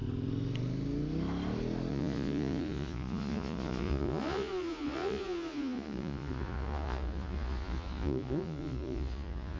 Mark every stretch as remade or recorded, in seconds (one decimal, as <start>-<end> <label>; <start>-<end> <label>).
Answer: 0.0-1.9 recorded; 1.9-9.6 remade